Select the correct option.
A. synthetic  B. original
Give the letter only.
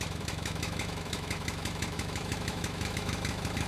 A